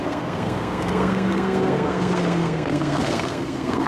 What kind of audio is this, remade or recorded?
remade